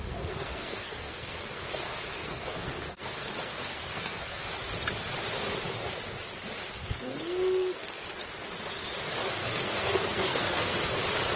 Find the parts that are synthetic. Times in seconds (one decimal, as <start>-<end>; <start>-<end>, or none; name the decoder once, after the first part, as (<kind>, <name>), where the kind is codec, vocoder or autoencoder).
0.0-4.5 (codec, SNAC); 6.8-8.0; 9.4-10.8